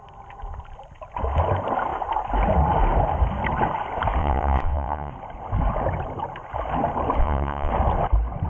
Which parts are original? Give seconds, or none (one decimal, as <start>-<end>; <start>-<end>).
0.0-4.2; 5.1-7.2; 7.7-8.5